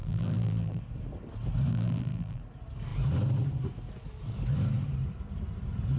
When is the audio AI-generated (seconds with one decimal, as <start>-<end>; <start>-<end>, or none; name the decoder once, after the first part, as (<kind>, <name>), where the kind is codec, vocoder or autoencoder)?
0.0-0.8 (vocoder, BigVGAN v2); 1.7-2.4